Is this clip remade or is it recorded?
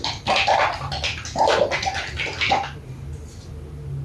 recorded